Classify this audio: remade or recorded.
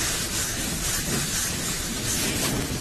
recorded